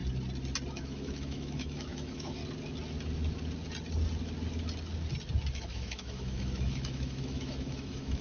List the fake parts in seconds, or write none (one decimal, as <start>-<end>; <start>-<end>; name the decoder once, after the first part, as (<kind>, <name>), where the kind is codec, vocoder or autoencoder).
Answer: 0.7-2.4 (autoencoder, DAC-VAE); 5.5-8.2